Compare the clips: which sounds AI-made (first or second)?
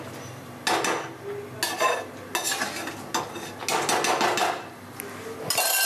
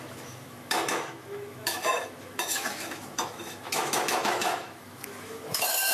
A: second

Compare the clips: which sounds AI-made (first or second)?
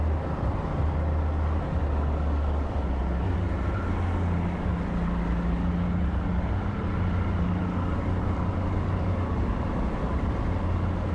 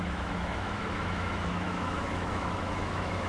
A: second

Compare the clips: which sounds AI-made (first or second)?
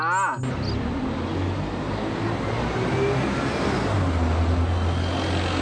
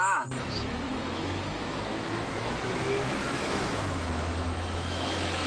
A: second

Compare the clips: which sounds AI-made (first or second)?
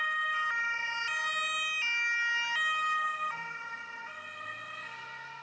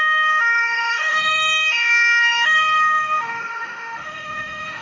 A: second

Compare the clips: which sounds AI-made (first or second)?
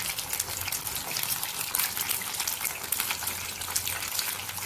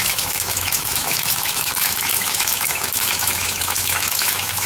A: second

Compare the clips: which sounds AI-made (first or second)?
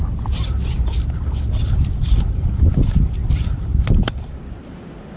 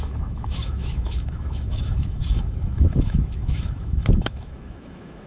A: second